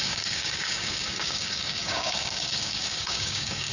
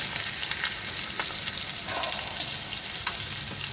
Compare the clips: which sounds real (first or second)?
second